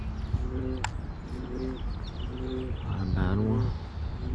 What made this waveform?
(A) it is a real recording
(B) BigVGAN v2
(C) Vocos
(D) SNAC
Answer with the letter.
A